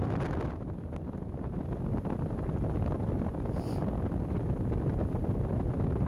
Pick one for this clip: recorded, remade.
recorded